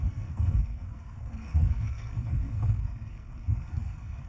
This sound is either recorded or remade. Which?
remade